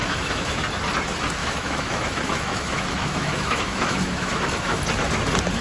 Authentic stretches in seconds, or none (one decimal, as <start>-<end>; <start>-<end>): 0.6-1.4; 4.8-5.6